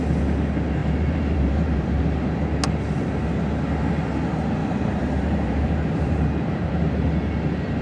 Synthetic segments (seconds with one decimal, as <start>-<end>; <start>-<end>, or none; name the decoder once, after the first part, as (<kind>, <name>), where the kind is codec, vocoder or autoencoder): 0.8-2.0 (vocoder, BigVGAN v2); 4.6-6.2